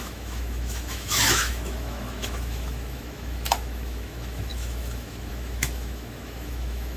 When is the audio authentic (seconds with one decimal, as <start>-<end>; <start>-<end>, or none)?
none